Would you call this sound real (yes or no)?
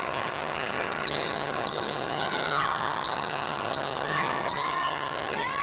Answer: no